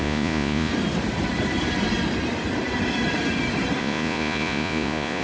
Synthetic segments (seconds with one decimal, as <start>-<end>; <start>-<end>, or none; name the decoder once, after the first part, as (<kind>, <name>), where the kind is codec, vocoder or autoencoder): 0.0-0.7 (vocoder, Vocos); 3.8-5.2